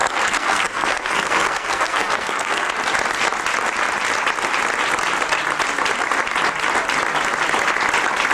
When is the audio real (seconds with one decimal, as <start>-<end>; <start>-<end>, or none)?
2.7-8.3